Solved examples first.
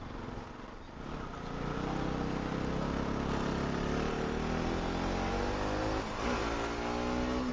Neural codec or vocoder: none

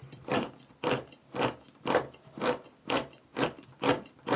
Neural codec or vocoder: none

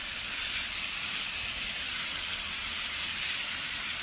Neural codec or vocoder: none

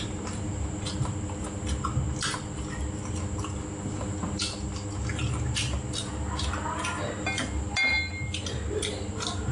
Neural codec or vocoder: none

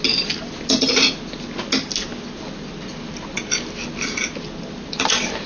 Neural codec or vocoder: none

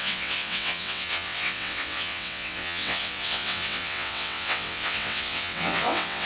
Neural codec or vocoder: vocoder, WaveNeXt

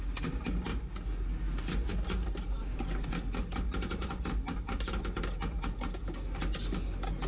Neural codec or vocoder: none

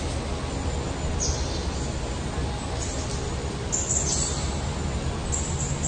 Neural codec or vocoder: none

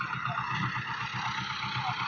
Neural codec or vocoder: none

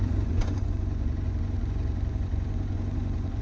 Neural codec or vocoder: vocoder, Vocos